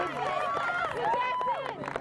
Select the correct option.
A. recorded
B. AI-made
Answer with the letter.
A